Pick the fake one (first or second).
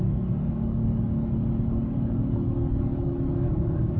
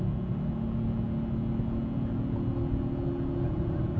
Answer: first